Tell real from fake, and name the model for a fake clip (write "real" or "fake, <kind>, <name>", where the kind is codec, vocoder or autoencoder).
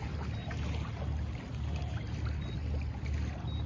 real